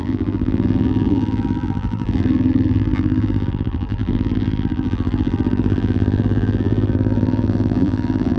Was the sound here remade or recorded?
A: remade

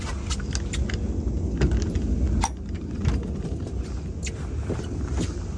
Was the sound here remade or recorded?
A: recorded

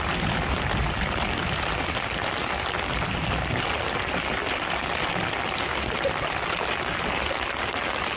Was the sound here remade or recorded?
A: recorded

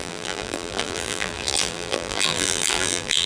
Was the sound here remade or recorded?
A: remade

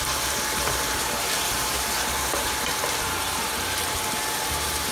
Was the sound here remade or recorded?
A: remade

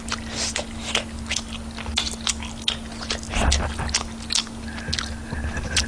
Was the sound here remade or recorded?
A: recorded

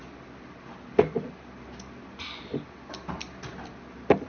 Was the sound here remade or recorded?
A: recorded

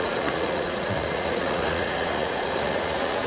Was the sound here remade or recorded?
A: remade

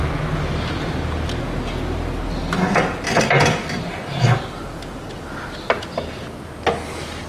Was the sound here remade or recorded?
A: recorded